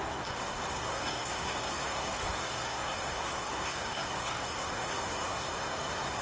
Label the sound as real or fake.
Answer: fake